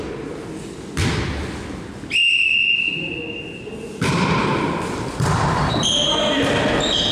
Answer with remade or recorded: recorded